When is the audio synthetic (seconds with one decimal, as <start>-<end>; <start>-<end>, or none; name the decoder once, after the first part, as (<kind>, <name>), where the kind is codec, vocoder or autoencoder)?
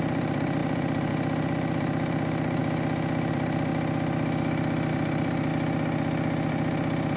0.0-2.6 (vocoder, BigVGAN v2); 3.3-3.7; 4.9-5.5; 6.5-7.2